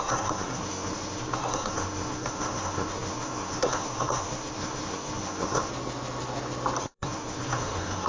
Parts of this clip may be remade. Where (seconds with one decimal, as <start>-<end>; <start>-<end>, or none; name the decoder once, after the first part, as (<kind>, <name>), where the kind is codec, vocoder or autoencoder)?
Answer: 0.0-5.7 (codec, SNAC); 6.8-8.1